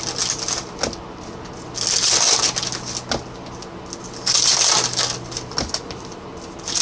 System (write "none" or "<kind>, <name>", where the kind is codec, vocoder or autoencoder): none